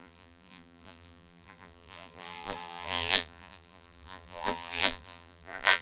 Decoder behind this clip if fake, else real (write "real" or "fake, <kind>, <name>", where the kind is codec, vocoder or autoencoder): fake, vocoder, BigVGAN v2